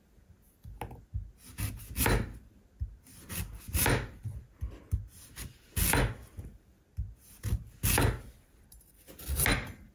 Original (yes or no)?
yes